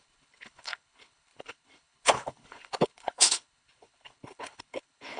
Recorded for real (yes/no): no